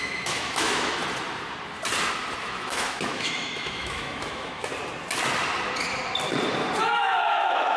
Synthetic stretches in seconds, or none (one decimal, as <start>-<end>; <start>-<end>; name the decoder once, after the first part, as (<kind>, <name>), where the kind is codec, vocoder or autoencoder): 0.0-1.0 (autoencoder, DAC-VAE); 2.4-4.7; 6.8-7.8